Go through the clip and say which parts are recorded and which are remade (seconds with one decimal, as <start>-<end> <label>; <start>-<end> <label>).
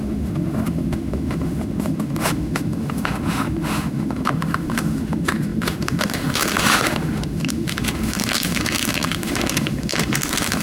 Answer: 0.0-10.6 remade